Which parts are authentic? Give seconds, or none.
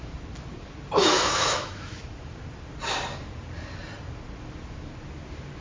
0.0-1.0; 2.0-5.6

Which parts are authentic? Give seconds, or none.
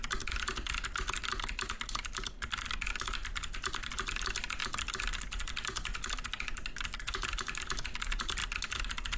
0.0-9.2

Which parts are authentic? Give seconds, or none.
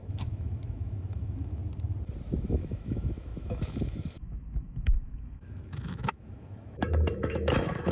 1.6-2.5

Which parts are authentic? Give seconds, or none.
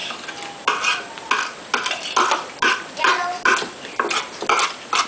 0.0-5.1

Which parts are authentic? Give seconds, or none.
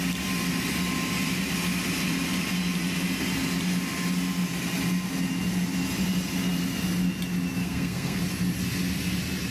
0.0-7.6; 8.2-9.5